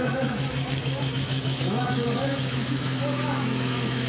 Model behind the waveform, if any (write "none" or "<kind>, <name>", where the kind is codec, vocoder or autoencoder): autoencoder, DAC-VAE